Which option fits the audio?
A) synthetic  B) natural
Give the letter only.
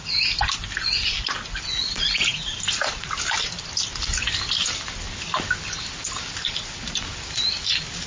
B